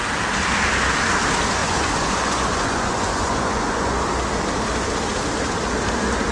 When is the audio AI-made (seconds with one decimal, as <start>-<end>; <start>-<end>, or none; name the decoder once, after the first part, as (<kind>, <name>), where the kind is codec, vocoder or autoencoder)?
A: 1.6-4.0 (vocoder, Vocos)